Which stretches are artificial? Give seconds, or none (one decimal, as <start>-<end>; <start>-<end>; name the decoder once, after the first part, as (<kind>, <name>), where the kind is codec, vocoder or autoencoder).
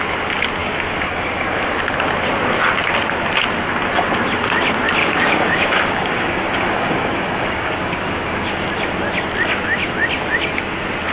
0.6-1.8 (codec, DAC); 5.0-8.5